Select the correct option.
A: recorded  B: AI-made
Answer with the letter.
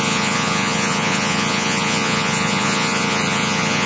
B